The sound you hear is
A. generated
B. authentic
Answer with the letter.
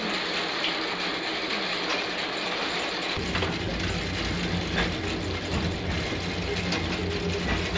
B